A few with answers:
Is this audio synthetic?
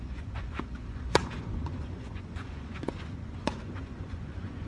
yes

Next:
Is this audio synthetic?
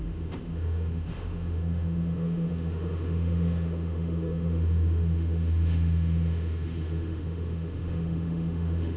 yes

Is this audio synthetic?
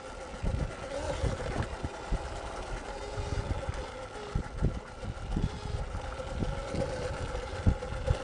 no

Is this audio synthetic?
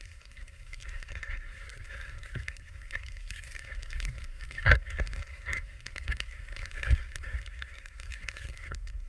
yes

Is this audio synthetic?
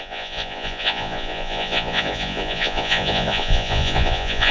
yes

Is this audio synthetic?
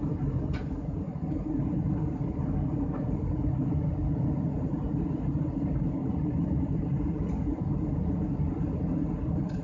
no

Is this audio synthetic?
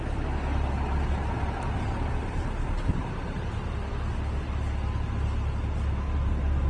no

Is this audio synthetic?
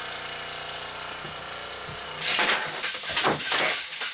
no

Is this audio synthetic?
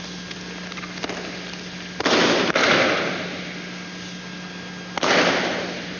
no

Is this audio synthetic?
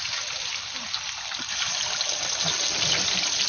no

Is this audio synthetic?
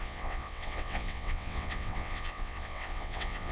yes